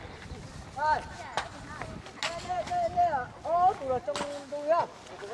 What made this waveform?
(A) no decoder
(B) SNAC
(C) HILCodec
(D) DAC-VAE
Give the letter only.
A